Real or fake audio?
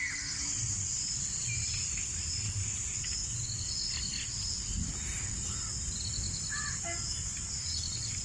real